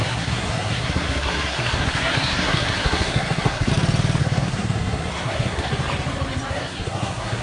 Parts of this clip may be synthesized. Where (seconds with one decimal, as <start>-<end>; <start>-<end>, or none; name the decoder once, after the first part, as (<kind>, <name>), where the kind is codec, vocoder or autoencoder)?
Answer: 0.0-3.7 (codec, SNAC); 4.2-5.7; 6.5-7.4